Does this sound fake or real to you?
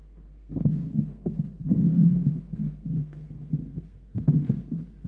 fake